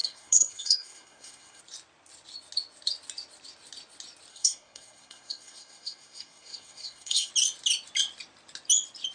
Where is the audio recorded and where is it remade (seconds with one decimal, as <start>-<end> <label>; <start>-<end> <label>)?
0.0-1.6 remade; 1.6-4.3 recorded; 4.3-7.3 remade; 7.3-9.1 recorded